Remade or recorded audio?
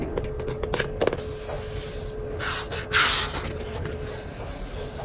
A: recorded